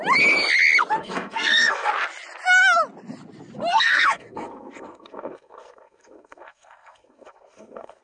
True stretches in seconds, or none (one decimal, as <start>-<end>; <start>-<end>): 0.0-1.0; 1.9-3.7

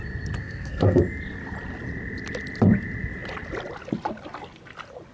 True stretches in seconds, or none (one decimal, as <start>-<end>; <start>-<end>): 0.0-0.4; 1.0-5.1